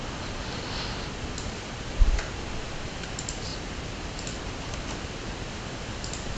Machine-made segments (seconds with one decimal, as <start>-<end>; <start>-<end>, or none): none